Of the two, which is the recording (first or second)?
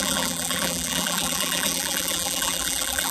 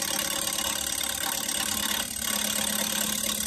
second